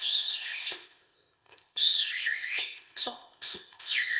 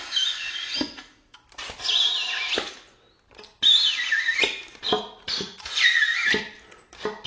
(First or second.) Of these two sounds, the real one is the second